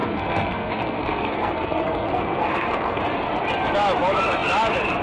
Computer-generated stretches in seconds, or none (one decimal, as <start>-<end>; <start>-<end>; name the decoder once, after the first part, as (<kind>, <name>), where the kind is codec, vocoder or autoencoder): 0.0-3.0 (codec, SNAC)